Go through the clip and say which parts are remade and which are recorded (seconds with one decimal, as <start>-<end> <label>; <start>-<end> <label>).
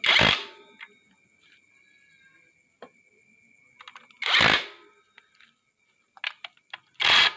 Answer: 0.0-7.4 recorded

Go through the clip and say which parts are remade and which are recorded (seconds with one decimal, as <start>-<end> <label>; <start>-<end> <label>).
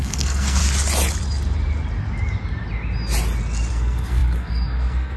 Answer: 0.0-0.6 remade; 0.6-3.7 recorded; 3.7-5.2 remade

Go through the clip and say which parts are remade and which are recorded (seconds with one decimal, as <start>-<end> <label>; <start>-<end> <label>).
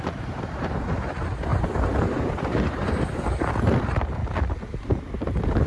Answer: 0.0-4.2 remade; 4.2-4.8 recorded; 4.8-5.7 remade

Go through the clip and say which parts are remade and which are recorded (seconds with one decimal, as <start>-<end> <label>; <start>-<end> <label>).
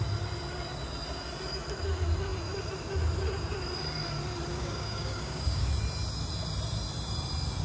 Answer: 0.0-4.5 recorded; 4.5-5.7 remade; 5.7-7.6 recorded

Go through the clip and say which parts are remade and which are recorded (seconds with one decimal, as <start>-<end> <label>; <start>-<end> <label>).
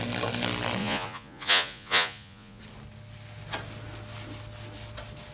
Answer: 0.0-0.8 recorded; 0.8-2.6 remade; 2.6-5.3 recorded